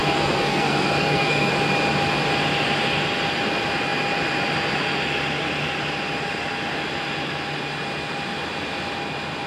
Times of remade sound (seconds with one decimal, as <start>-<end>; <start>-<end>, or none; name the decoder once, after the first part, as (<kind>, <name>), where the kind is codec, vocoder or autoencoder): 0.0-1.5 (codec, SNAC)